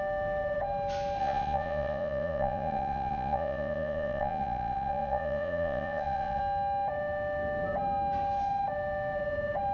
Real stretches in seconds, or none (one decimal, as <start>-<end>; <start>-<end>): 0.0-1.2; 6.4-9.7